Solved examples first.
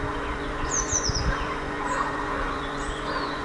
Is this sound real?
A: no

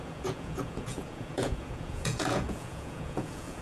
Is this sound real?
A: no